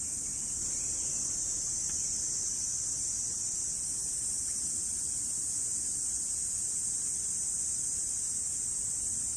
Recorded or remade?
recorded